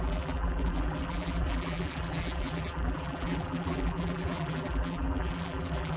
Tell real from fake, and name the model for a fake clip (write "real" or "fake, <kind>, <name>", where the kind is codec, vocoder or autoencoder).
fake, vocoder, BigVGAN v2